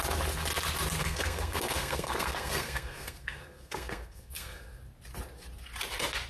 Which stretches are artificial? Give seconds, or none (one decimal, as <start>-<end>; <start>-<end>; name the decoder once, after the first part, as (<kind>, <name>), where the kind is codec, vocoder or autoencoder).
1.0-4.8 (codec, SNAC)